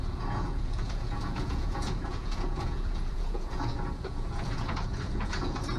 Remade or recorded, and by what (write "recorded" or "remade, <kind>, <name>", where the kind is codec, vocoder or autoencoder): remade, vocoder, Vocos